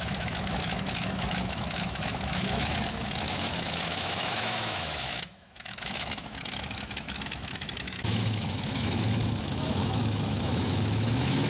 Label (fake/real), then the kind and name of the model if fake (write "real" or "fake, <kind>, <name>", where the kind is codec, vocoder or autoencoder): fake, autoencoder, DAC-VAE